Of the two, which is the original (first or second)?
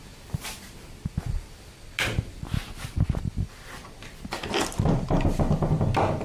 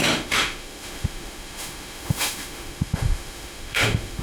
first